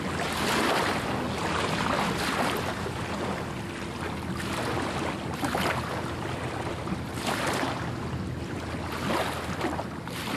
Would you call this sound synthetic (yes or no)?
no